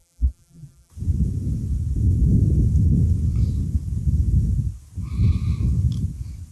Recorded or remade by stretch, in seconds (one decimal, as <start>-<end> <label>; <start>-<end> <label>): 0.0-0.9 remade; 0.9-6.5 recorded